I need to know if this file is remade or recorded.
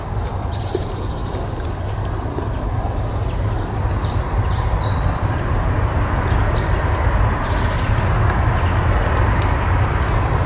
recorded